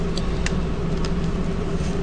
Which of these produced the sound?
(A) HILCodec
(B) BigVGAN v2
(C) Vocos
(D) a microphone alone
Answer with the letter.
B